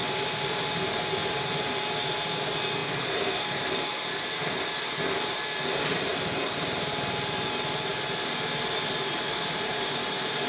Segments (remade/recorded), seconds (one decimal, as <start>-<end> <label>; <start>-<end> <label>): 0.0-0.5 remade; 0.5-1.2 recorded; 1.2-1.7 remade; 1.7-2.8 recorded; 2.8-5.0 remade; 5.0-6.1 recorded; 6.1-7.9 remade; 7.9-10.5 recorded